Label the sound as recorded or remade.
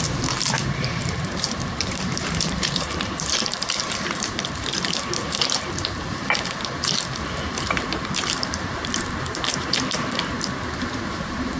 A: remade